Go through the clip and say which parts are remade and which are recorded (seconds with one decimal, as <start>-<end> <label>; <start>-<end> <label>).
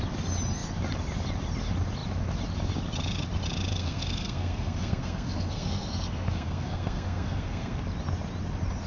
0.0-3.7 recorded; 3.7-7.8 remade; 7.8-8.9 recorded